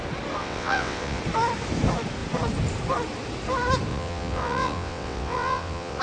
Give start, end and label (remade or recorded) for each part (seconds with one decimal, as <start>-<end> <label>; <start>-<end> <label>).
0.0-0.4 recorded; 0.4-1.2 remade; 1.2-3.9 recorded; 3.9-6.0 remade